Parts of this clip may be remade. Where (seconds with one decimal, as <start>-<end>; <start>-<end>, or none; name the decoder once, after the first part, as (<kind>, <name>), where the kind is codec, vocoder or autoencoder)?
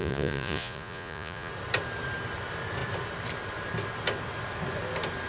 0.0-1.5 (vocoder, Vocos)